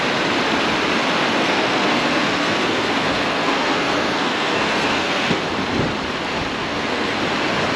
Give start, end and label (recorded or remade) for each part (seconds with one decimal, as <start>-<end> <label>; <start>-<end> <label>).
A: 0.0-1.4 recorded; 1.4-5.4 remade; 5.4-6.6 recorded; 6.6-7.2 remade; 7.2-7.8 recorded